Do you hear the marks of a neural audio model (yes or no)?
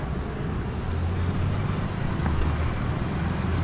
no